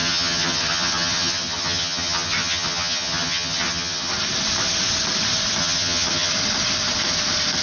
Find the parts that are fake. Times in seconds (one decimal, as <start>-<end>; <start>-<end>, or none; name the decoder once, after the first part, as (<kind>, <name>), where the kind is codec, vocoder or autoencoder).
0.0-4.1 (vocoder, HiFi-GAN); 5.6-6.3